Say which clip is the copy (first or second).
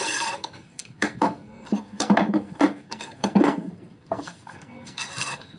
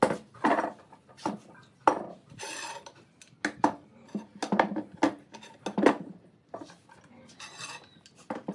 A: first